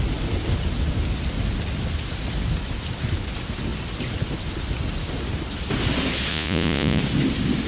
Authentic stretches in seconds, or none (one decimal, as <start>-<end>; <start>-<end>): 0.0-6.3; 7.0-7.7